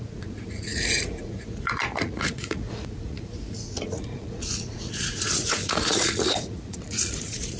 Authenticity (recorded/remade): remade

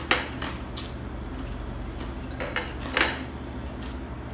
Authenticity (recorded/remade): recorded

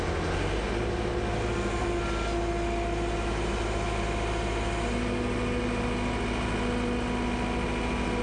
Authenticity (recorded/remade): recorded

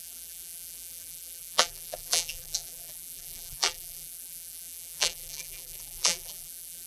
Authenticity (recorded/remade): remade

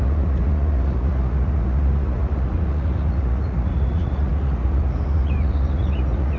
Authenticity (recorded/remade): remade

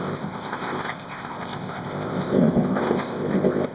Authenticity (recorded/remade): remade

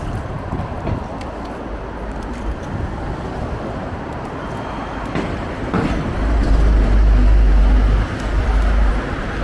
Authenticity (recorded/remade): recorded